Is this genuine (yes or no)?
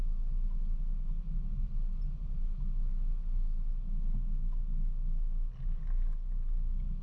yes